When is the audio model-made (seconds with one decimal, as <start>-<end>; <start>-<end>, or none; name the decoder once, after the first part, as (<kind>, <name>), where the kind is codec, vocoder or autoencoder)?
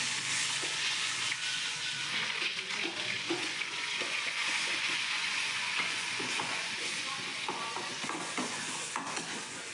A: 0.0-9.7 (vocoder, Vocos)